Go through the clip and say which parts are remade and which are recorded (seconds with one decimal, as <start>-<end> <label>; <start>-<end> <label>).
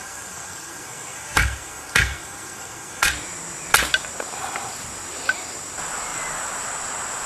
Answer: 0.0-3.1 remade; 3.1-7.3 recorded